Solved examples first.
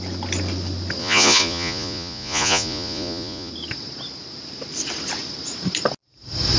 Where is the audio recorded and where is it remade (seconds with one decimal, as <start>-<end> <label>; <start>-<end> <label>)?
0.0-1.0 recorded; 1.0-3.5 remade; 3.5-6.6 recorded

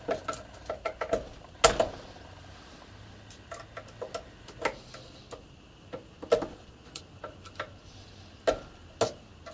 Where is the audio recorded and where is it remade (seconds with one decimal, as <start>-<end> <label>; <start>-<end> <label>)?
0.0-6.5 recorded; 6.5-7.0 remade; 7.0-9.5 recorded

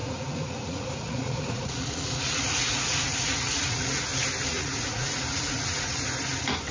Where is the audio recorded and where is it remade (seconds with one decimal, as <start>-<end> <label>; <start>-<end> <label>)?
0.0-4.0 remade; 4.0-4.5 recorded; 4.5-6.0 remade; 6.0-6.7 recorded

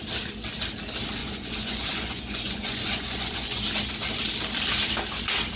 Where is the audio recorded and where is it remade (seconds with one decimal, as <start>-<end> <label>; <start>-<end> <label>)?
0.0-1.2 recorded; 1.2-3.6 remade; 3.6-5.6 recorded

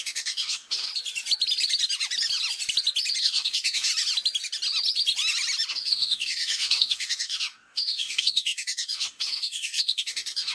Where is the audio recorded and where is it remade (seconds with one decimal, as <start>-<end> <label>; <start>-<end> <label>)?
0.0-0.9 remade; 0.9-3.2 recorded; 3.2-3.9 remade; 3.9-5.7 recorded; 5.7-10.5 remade

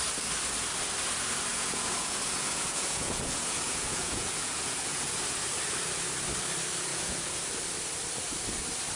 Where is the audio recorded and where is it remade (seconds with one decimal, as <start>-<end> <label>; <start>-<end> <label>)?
0.0-1.5 recorded; 1.5-5.2 remade; 5.2-6.9 recorded; 6.9-7.4 remade; 7.4-9.0 recorded